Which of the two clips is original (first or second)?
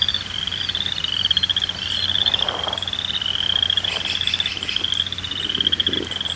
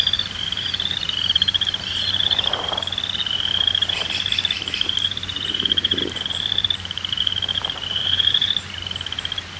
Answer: first